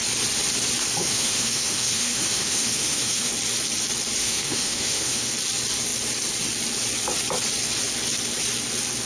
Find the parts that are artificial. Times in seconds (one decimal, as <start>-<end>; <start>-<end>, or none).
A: 1.0-3.3; 4.2-5.3

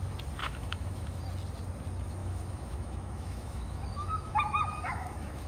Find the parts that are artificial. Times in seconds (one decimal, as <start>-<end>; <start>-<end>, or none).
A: 0.4-1.2; 2.2-5.5

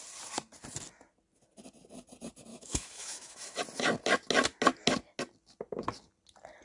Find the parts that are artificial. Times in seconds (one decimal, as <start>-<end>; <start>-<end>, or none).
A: 2.5-3.6

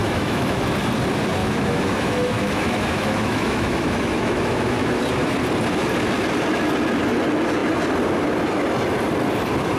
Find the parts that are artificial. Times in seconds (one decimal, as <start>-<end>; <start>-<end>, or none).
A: 0.0-0.6; 1.4-5.0

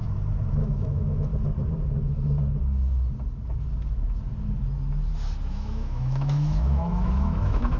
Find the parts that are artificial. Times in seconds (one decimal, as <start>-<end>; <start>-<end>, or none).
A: 0.5-1.3; 5.5-7.8

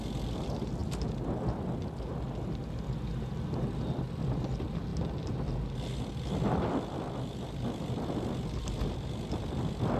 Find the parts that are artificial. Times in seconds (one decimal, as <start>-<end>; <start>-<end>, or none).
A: none